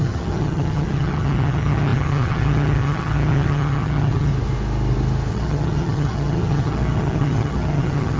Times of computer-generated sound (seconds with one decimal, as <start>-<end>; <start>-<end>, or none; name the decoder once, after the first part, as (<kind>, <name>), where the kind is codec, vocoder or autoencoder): 0.0-4.3 (vocoder, HiFi-GAN); 5.3-8.2